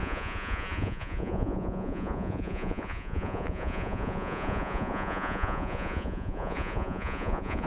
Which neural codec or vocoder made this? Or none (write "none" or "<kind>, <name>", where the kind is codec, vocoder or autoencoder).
vocoder, Vocos